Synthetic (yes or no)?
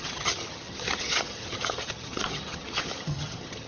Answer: yes